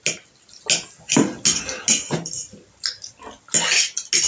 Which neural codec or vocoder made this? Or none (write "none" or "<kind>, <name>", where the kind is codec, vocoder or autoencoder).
none